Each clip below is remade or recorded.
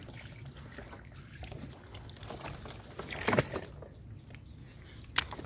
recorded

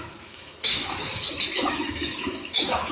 remade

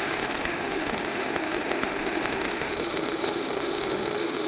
remade